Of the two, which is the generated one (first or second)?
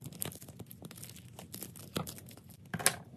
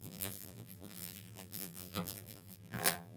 second